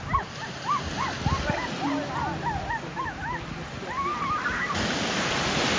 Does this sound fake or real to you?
real